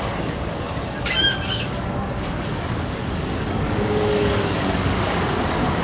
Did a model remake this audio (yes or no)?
yes